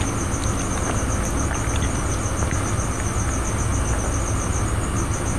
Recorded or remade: recorded